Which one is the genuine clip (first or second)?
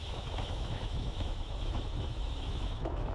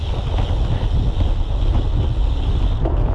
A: second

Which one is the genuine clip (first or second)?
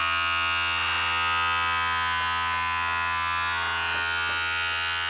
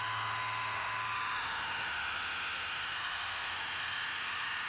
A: first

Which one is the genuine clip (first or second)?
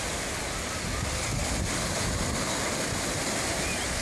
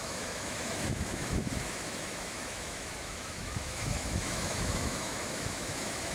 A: first